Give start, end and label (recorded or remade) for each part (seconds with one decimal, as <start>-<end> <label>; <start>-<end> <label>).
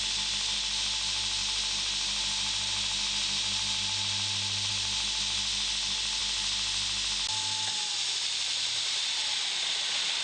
0.0-10.2 recorded